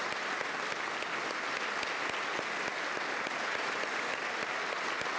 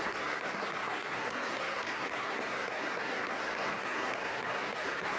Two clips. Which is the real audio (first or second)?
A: first